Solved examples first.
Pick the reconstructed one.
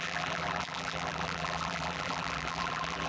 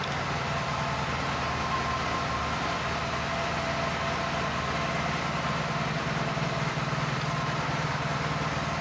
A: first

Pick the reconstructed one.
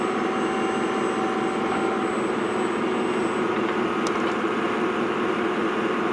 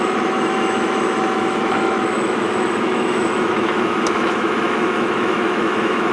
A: second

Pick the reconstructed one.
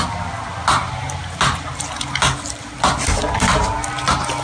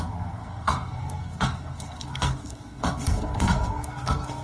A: second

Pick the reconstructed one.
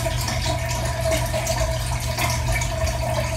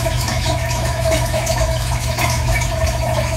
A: second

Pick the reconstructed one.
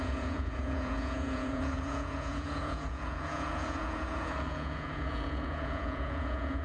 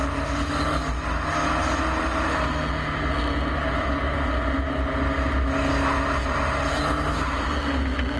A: first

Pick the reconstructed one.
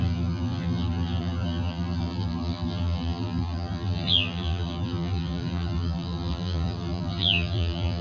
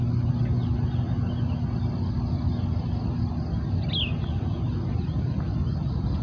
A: first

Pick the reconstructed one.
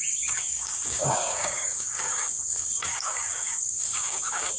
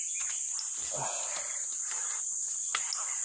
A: first